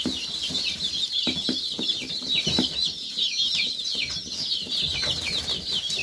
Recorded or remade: recorded